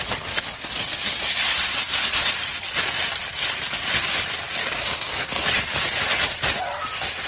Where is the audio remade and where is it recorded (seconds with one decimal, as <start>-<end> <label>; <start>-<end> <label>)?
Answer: 0.0-4.6 recorded; 4.6-5.3 remade; 5.3-7.3 recorded